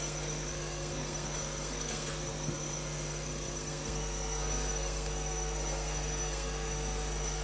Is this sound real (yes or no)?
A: no